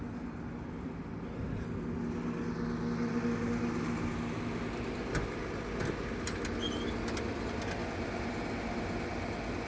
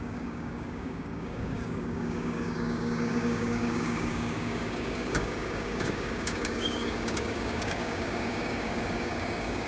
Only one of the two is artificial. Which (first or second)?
second